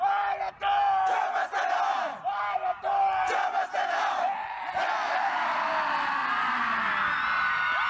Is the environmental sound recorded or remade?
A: recorded